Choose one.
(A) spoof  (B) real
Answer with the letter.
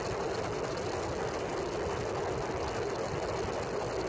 B